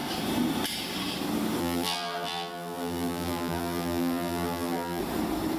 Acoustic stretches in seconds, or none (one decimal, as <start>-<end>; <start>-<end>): 0.0-1.6; 5.0-5.6